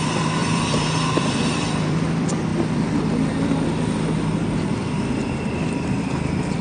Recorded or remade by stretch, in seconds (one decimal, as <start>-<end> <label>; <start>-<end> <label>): 0.0-6.6 remade